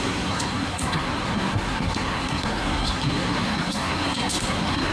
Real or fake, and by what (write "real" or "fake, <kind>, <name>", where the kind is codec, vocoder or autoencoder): fake, codec, SNAC